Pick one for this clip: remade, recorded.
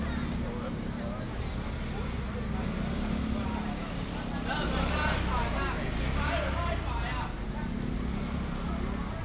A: recorded